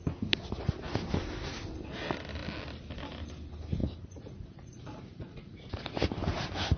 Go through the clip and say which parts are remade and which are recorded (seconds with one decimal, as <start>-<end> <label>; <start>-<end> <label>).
0.0-3.8 recorded; 3.8-5.7 remade; 5.7-6.8 recorded